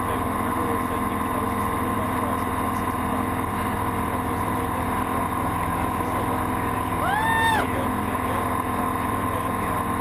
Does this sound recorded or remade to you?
recorded